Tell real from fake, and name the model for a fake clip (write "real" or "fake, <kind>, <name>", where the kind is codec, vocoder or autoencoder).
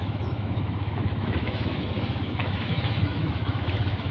fake, autoencoder, DAC-VAE